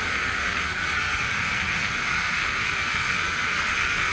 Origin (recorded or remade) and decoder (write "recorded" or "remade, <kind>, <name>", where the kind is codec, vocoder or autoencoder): remade, codec, SNAC